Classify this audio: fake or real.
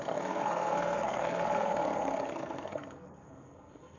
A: fake